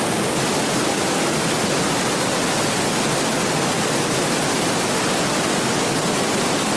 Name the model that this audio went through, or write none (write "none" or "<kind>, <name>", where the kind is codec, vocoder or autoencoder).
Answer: none